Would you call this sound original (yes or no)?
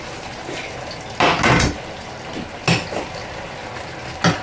yes